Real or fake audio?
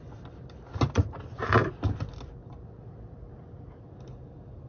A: real